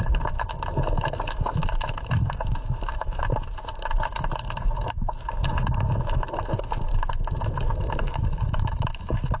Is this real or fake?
fake